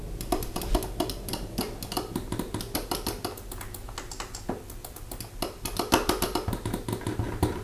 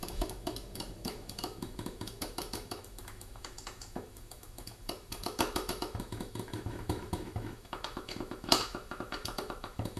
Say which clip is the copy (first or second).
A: second